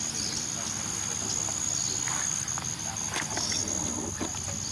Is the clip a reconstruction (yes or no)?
no